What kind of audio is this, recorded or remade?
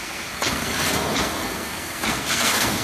remade